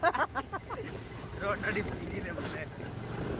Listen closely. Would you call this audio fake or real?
real